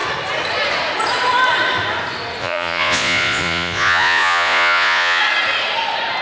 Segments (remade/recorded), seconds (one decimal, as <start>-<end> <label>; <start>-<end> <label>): 0.0-2.4 recorded; 2.4-5.2 remade; 5.2-6.2 recorded